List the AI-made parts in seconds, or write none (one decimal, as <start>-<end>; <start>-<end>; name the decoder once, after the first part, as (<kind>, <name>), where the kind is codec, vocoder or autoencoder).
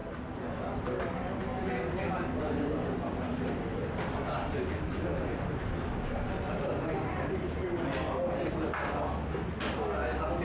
none